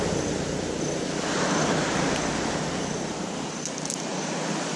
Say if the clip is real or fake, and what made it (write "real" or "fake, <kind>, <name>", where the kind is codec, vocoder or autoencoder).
real